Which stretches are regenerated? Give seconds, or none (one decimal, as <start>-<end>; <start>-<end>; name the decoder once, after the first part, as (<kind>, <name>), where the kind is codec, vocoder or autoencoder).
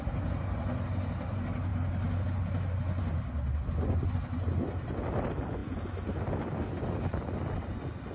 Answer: none